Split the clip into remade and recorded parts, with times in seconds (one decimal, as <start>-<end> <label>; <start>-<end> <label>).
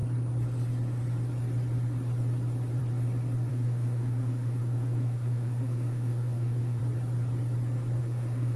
0.0-3.5 recorded; 3.5-6.8 remade; 6.8-8.0 recorded; 8.0-8.6 remade